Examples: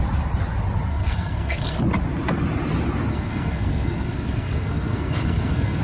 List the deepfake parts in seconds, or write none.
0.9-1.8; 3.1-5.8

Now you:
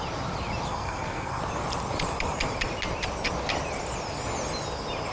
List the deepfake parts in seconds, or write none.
0.7-1.4

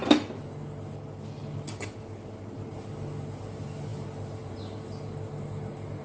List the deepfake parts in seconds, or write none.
none